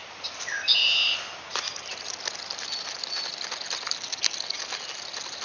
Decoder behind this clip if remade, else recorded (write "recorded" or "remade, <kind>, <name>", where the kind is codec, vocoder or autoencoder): recorded